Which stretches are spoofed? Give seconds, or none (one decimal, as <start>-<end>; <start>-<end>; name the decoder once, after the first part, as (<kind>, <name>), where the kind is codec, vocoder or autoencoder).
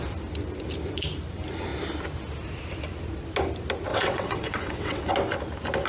3.9-5.1 (vocoder, WaveNeXt)